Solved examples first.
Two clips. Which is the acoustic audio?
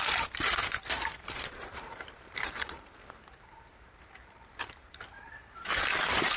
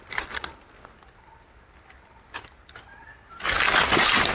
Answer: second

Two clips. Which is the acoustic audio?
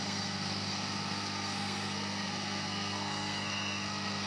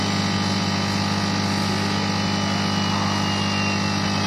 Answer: second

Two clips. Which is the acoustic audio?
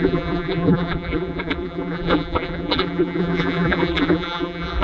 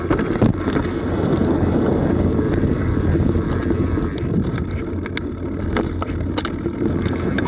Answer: second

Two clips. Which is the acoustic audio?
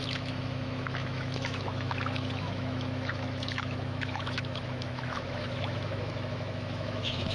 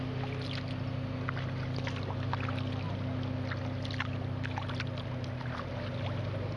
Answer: second